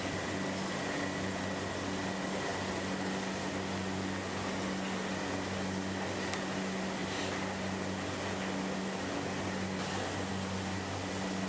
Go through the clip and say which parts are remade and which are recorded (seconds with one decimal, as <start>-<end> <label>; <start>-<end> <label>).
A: 0.0-11.5 recorded